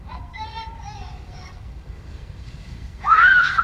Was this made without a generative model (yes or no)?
no